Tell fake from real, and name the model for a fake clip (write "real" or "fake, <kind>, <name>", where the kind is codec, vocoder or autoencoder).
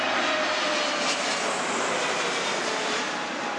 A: real